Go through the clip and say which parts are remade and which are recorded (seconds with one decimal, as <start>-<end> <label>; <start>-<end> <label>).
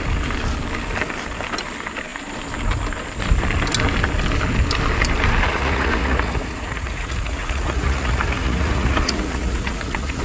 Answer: 0.0-5.5 recorded; 5.5-10.2 remade